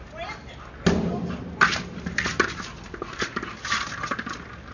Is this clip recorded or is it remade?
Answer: recorded